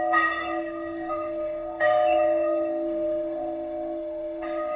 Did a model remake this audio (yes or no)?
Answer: yes